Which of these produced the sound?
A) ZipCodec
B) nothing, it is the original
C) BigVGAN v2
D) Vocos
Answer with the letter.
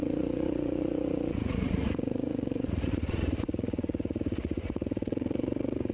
D